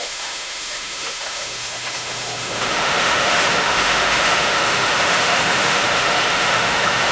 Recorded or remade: remade